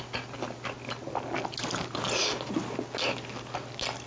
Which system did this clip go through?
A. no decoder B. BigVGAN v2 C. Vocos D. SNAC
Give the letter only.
A